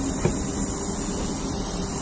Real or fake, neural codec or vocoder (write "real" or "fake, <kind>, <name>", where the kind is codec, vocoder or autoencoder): real